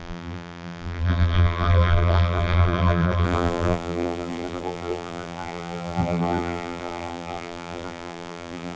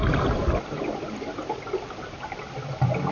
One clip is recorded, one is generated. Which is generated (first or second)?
first